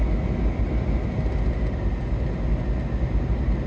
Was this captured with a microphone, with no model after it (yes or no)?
yes